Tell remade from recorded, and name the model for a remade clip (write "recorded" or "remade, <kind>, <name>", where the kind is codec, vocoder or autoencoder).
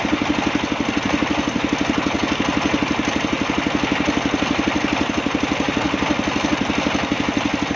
recorded